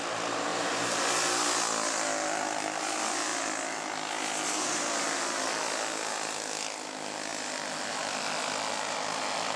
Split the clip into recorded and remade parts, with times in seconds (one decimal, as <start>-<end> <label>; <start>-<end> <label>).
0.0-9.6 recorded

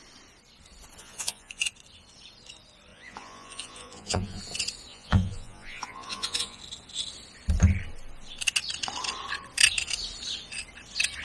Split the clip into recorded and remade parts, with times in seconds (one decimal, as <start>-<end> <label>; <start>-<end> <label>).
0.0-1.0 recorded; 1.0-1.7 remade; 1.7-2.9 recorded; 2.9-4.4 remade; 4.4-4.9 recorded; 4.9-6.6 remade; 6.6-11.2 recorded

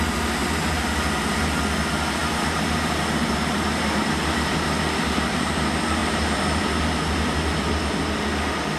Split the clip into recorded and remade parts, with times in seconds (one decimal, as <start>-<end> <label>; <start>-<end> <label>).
0.0-2.2 recorded; 2.2-5.5 remade; 5.5-6.0 recorded; 6.0-6.6 remade; 6.6-8.8 recorded

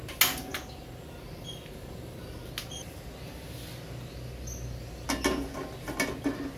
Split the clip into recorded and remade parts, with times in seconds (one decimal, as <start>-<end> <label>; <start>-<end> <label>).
0.0-6.6 recorded

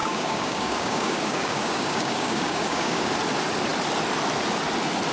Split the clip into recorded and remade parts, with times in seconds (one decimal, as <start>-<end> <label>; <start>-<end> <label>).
0.0-3.1 remade; 3.1-5.1 recorded

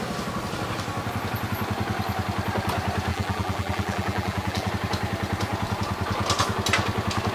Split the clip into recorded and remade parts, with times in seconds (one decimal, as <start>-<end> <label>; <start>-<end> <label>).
0.0-3.1 recorded; 3.1-4.7 remade; 4.7-7.3 recorded

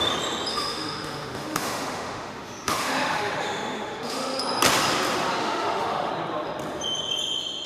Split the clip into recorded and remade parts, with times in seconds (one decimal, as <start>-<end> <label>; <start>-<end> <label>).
0.0-0.5 recorded; 0.5-4.4 remade; 4.4-5.4 recorded; 5.4-6.1 remade; 6.1-7.7 recorded

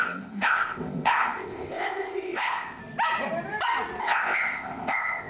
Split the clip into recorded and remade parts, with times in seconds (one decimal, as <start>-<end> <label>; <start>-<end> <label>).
0.0-2.8 remade; 2.8-4.0 recorded; 4.0-5.3 remade